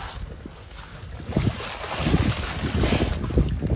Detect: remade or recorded recorded